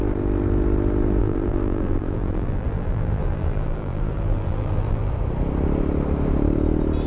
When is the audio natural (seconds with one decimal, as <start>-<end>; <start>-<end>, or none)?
0.0-1.2; 5.1-7.1